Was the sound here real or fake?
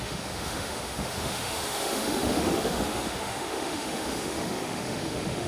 fake